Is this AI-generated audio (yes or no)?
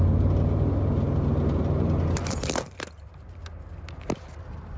no